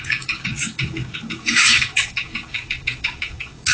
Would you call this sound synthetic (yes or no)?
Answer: yes